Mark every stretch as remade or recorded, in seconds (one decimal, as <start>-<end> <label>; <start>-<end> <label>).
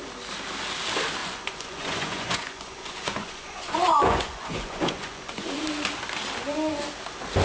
0.0-1.2 recorded; 1.2-5.6 remade; 5.6-7.4 recorded